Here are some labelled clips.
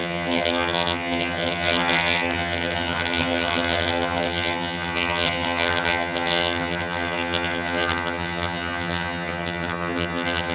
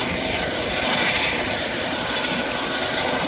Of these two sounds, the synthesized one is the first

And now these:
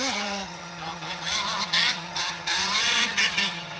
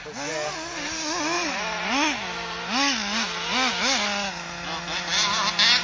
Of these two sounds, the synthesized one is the first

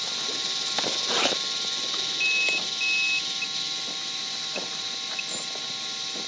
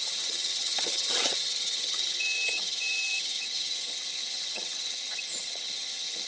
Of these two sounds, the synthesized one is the second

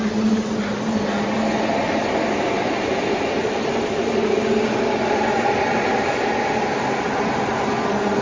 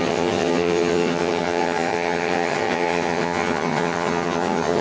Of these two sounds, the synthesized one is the second